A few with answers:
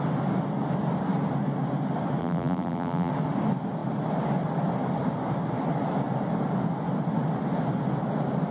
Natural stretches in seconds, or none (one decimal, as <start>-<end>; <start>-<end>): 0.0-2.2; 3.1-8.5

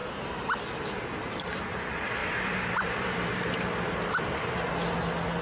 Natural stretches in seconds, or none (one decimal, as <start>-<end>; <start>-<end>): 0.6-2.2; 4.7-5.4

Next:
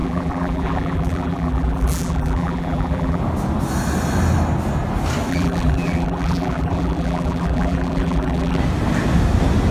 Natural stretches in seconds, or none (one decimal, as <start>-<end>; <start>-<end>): 3.2-5.3; 8.6-9.7